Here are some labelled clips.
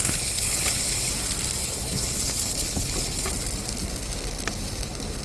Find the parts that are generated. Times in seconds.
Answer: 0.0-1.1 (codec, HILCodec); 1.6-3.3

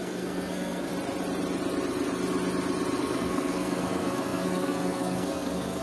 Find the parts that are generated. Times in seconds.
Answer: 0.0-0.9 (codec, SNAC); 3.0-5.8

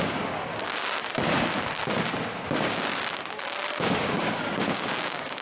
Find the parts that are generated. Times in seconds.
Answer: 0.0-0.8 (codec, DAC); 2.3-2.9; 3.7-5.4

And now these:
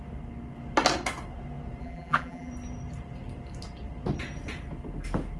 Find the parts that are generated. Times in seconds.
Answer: 1.8-2.5 (vocoder, BigVGAN v2)

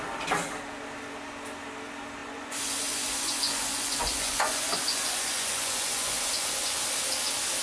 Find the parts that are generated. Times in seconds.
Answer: 2.2-6.8 (vocoder, Vocos)

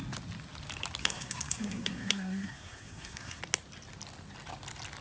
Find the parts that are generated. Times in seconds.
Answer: 1.0-3.4 (codec, SNAC)

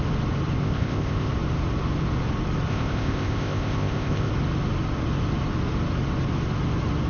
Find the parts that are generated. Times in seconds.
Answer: 0.6-1.3 (codec, ZipCodec); 2.7-4.3

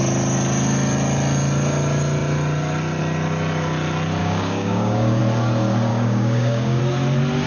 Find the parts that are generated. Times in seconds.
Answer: 4.2-5.2 (codec, DAC); 5.9-6.8